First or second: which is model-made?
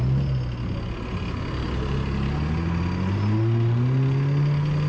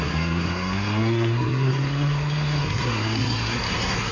second